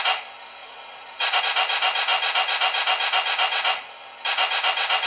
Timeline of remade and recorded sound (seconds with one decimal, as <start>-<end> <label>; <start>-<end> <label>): 0.0-0.6 recorded; 0.6-1.4 remade; 1.4-5.1 recorded